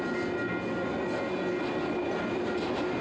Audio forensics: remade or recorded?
recorded